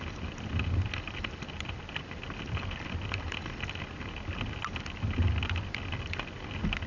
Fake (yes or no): no